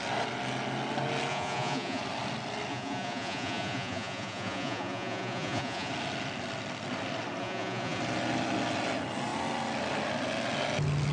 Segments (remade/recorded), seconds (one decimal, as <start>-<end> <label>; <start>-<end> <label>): 0.0-1.3 recorded; 1.3-2.0 remade; 2.0-2.7 recorded; 2.7-5.9 remade; 5.9-7.4 recorded; 7.4-8.0 remade; 8.0-11.1 recorded